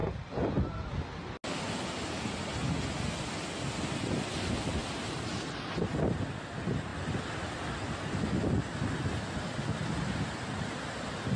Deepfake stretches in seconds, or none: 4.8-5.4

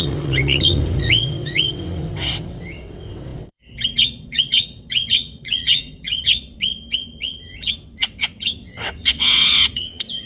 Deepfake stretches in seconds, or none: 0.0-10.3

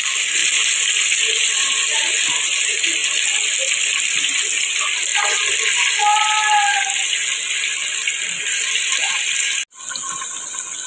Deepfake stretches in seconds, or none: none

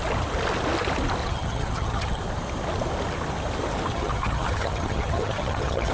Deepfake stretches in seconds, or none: 1.2-2.2; 3.9-5.9

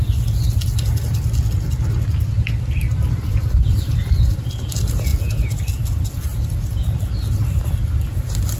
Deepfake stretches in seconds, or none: none

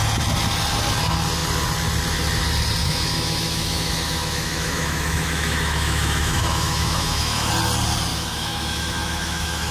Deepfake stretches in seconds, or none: 2.8-7.5; 8.1-9.7

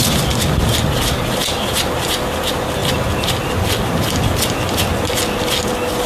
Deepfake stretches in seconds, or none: none

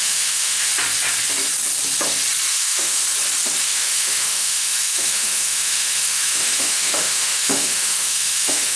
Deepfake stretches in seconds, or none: 0.0-0.7; 2.5-3.0; 3.6-8.8